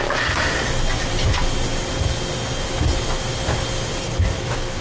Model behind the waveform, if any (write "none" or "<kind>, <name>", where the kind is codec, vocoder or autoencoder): none